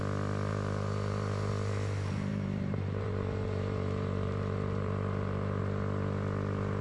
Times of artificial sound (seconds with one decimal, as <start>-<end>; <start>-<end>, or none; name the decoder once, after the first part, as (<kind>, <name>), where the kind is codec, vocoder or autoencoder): 0.5-1.5 (vocoder, BigVGAN v2); 2.3-5.6